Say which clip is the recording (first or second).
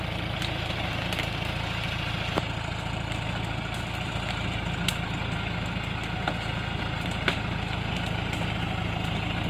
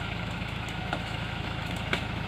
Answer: first